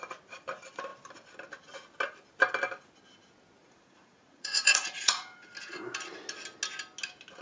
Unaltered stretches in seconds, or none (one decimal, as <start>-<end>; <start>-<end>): 0.0-3.6; 5.5-7.4